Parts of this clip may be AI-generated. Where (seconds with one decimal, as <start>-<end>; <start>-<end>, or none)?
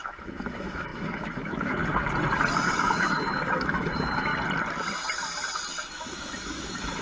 0.0-1.8; 2.7-4.3; 5.9-7.0